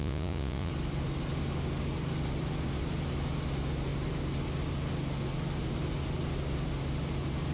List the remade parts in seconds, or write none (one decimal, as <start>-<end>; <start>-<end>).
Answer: 0.0-0.7